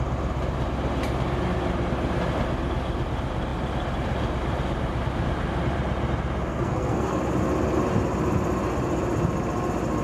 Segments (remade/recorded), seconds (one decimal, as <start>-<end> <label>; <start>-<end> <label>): 0.0-6.5 recorded; 6.5-7.2 remade; 7.2-10.0 recorded